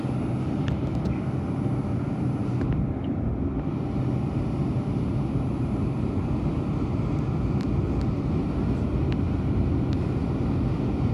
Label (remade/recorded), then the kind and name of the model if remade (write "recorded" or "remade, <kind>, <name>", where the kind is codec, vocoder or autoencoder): recorded